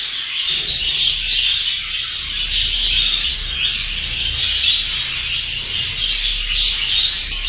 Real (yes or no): yes